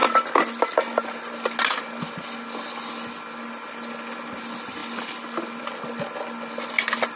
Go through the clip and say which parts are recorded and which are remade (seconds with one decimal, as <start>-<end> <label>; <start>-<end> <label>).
0.0-7.2 recorded